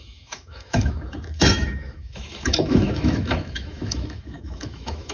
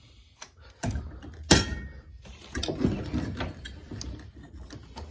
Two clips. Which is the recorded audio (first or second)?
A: second